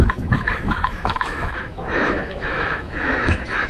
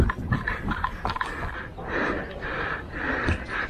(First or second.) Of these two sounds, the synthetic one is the first